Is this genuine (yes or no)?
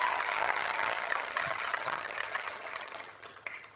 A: no